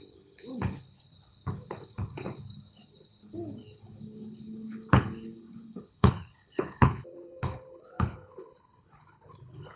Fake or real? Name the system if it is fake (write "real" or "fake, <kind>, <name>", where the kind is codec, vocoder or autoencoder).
fake, codec, HILCodec